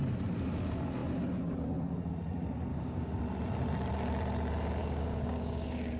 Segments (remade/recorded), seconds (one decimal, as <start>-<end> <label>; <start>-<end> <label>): 0.0-2.7 recorded; 2.7-3.2 remade; 3.2-4.8 recorded; 4.8-6.0 remade